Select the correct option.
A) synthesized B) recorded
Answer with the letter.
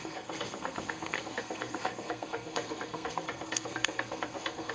A